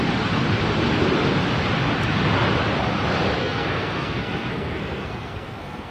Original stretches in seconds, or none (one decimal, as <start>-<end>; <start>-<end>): 0.0-3.4